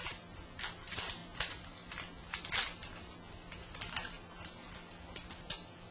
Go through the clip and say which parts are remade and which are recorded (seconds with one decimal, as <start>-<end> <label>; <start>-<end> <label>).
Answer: 0.0-5.9 recorded